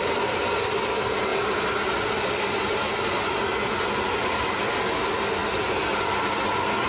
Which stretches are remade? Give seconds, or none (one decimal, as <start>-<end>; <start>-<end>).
none